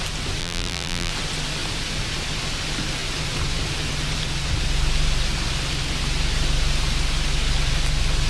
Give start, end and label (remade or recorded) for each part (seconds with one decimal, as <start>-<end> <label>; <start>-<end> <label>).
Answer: 0.0-0.4 recorded; 0.4-1.1 remade; 1.1-8.3 recorded